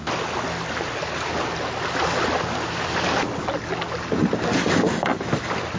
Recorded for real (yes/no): yes